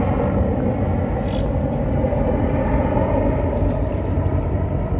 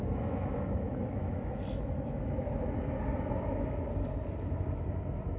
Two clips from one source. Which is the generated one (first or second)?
second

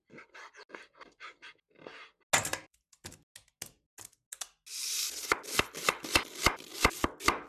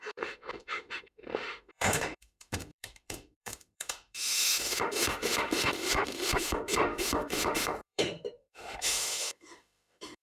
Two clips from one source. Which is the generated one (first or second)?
second